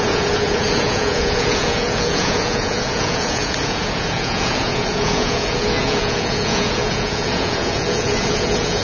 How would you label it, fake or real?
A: fake